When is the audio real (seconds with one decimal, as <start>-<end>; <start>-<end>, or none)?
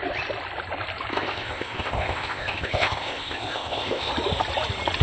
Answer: 0.0-1.1; 4.1-5.0